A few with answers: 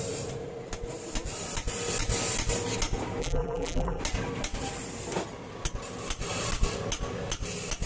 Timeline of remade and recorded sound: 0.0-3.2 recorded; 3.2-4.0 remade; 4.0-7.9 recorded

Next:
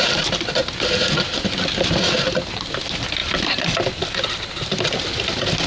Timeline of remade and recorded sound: 0.0-3.2 recorded; 3.2-4.3 remade; 4.3-5.7 recorded